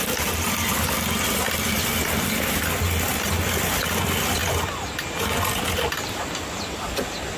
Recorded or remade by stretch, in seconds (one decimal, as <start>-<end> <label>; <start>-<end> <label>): 0.0-7.4 recorded